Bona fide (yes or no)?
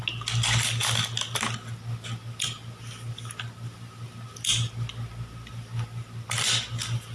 yes